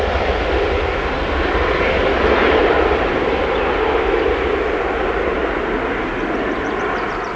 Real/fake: real